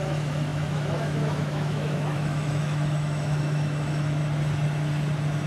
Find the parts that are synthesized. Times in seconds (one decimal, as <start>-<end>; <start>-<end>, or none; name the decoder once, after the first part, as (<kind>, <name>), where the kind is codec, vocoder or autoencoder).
0.0-4.2 (autoencoder, DAC-VAE)